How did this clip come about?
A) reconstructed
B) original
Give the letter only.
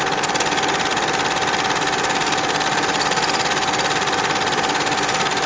B